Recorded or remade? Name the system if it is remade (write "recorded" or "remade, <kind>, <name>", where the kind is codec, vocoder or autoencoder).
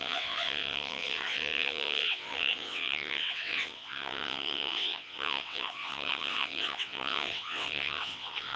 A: remade, vocoder, WaveNeXt